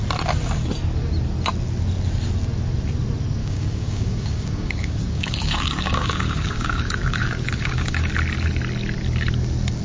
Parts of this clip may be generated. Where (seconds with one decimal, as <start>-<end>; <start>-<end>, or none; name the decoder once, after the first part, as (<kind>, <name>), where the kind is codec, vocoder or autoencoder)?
3.4-8.1 (codec, DAC)